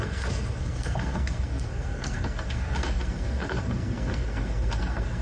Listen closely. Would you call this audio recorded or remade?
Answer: remade